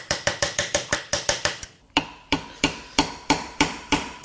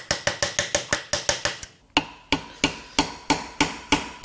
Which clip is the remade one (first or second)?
first